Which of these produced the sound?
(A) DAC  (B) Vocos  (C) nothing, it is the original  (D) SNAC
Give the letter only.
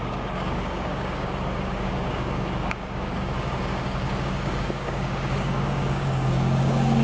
A